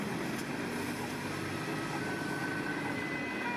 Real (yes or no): yes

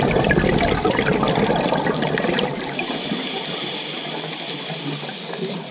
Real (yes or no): yes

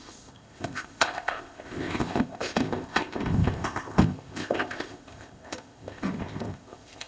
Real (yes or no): no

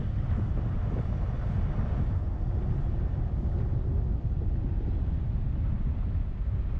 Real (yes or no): yes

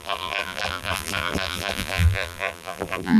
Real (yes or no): no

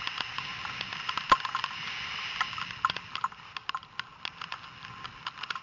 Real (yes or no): yes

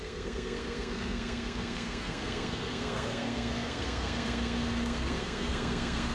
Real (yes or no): no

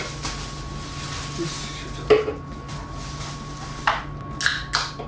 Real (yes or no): yes